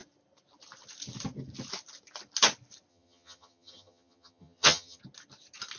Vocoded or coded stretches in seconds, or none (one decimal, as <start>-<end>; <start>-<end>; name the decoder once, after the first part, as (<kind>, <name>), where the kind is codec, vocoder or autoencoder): 2.9-5.0 (vocoder, HiFi-GAN)